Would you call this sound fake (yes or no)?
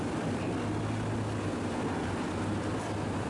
yes